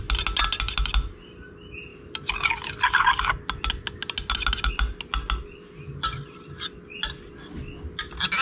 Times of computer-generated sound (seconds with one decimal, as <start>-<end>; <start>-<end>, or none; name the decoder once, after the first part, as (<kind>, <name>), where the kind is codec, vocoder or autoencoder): none